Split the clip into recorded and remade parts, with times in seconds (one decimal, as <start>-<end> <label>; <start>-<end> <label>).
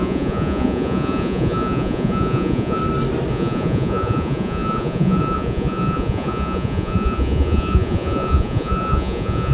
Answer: 0.0-2.8 remade; 2.8-3.3 recorded; 3.3-9.5 remade